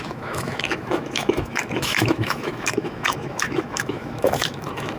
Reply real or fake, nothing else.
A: fake